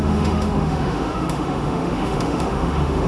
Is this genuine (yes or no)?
no